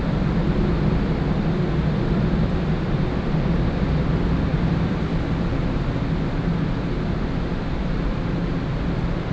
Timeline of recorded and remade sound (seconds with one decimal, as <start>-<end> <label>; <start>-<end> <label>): 0.0-9.3 recorded